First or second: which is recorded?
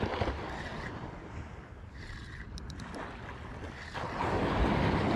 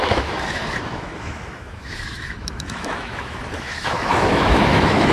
first